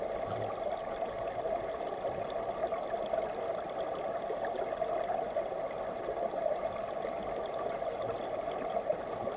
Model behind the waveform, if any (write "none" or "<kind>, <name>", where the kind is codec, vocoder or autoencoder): none